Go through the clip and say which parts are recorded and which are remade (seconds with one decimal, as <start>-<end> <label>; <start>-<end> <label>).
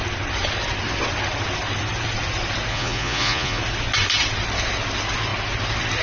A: 0.0-2.7 recorded; 2.7-3.6 remade; 3.6-6.0 recorded